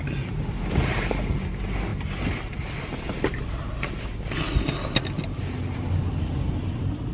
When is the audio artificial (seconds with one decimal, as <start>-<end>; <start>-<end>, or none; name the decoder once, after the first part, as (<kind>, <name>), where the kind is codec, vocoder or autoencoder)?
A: none